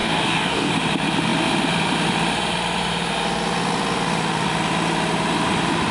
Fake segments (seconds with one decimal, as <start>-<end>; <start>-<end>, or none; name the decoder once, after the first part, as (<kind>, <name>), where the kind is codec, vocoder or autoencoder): 0.0-0.7 (codec, DAC)